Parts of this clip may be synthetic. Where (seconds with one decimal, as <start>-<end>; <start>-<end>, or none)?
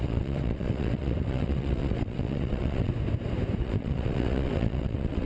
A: 0.0-2.9; 3.6-5.3